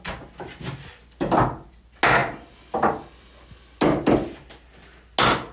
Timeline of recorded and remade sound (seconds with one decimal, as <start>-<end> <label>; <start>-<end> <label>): 0.0-5.5 recorded